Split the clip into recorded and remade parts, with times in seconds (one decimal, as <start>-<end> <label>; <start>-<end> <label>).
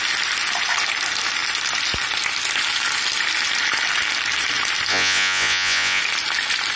0.0-4.9 recorded; 4.9-6.0 remade; 6.0-6.8 recorded